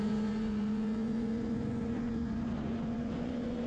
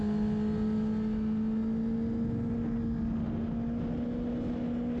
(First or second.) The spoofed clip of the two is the first